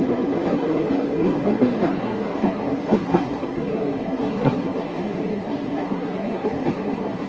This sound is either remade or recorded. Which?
remade